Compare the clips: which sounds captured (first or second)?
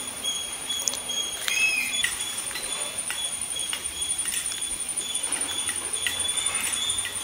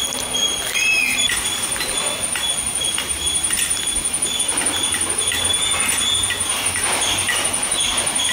second